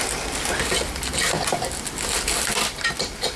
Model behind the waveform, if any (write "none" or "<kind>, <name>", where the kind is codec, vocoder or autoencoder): none